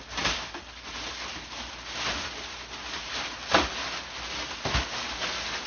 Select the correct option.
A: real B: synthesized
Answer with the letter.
A